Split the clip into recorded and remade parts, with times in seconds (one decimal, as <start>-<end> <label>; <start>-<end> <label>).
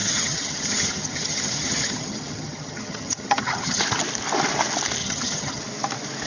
0.0-3.8 remade; 3.8-5.0 recorded; 5.0-5.6 remade; 5.6-6.3 recorded